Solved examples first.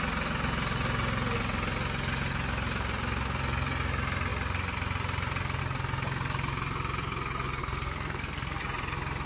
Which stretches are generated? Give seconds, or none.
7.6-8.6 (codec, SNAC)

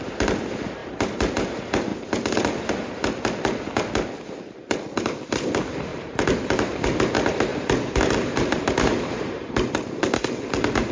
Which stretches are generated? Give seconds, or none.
5.9-7.1 (vocoder, BigVGAN v2); 7.5-9.7

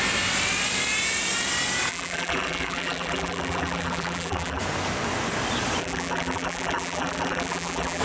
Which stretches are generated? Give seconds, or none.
1.9-4.6 (vocoder, BigVGAN v2); 5.8-8.0

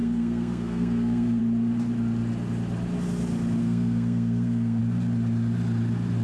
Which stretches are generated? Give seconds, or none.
0.0-1.4 (codec, SNAC); 3.6-4.8

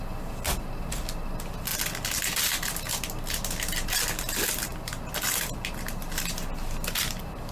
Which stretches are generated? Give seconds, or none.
none